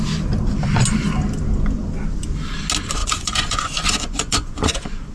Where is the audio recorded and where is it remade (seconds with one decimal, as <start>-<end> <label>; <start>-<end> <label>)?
0.0-3.0 recorded; 3.0-5.1 remade